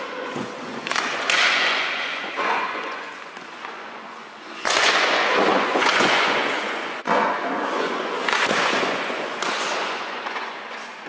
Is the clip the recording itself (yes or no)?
no